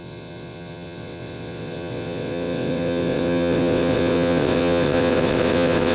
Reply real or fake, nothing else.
fake